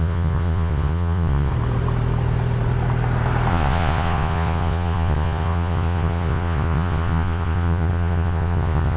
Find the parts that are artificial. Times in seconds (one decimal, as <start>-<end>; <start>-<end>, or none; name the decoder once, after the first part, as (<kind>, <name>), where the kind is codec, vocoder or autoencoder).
0.0-1.5 (vocoder, Vocos); 3.5-9.0